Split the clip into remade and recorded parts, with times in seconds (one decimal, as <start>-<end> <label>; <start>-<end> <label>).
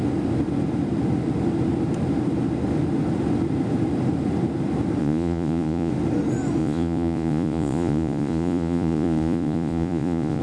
0.0-5.0 recorded; 5.0-5.9 remade; 5.9-6.6 recorded; 6.6-10.4 remade